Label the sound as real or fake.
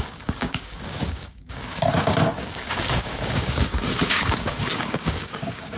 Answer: fake